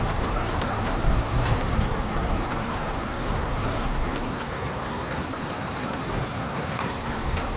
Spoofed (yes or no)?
yes